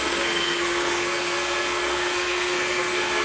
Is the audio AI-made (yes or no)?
yes